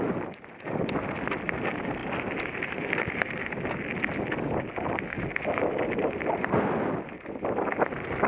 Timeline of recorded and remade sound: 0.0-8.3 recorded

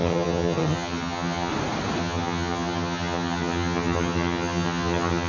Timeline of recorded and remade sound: 0.0-1.5 remade; 1.5-2.0 recorded; 2.0-5.3 remade

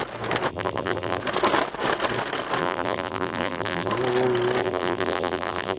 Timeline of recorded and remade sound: 0.0-0.5 recorded; 0.5-1.2 remade; 1.2-2.6 recorded; 2.6-3.9 remade; 3.9-4.6 recorded; 4.6-5.8 remade

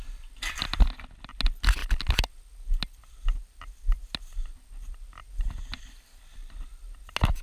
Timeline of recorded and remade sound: 0.0-7.4 recorded